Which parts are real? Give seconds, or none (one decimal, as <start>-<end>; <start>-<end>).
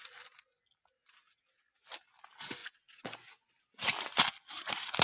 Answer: 0.0-2.6; 3.5-5.0